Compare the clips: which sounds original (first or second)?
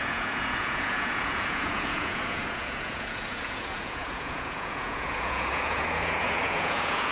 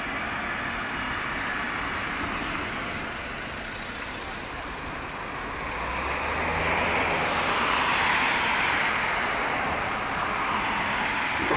second